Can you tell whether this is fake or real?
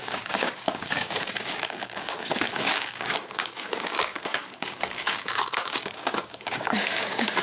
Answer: fake